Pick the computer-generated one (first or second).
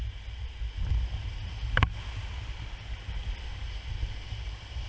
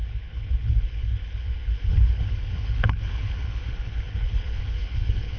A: second